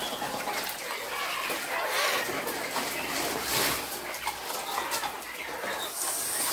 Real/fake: real